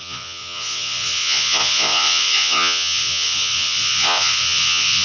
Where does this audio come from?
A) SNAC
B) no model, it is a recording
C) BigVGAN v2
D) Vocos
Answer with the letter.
D